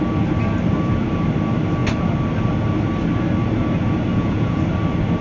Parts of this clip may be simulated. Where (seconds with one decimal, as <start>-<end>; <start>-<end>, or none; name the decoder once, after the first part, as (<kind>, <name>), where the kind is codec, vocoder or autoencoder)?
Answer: 4.1-4.6 (vocoder, Vocos)